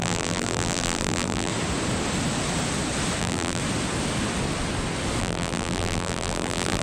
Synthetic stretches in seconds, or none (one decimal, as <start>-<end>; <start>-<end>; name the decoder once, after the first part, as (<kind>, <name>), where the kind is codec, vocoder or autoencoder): 0.0-1.5 (vocoder, BigVGAN v2); 3.2-3.6; 5.2-6.8